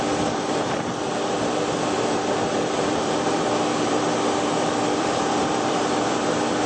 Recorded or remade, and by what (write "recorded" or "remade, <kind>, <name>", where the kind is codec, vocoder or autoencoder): remade, vocoder, BigVGAN v2